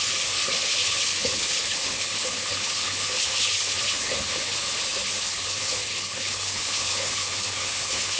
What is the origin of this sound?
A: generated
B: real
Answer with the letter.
A